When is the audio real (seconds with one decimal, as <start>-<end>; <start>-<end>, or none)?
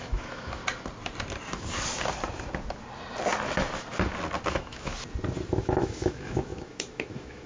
0.6-4.5; 4.9-5.6